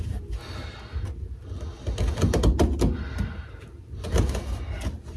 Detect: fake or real real